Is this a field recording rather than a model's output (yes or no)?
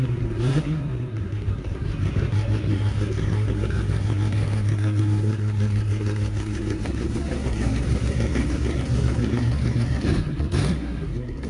no